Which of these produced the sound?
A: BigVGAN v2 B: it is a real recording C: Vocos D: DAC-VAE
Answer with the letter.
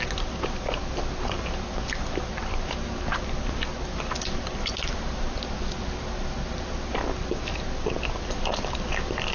B